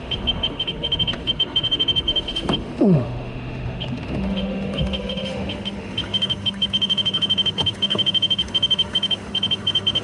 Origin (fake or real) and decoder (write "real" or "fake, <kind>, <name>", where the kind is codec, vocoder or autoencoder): fake, autoencoder, DAC-VAE